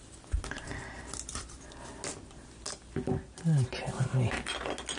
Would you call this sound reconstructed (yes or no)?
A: no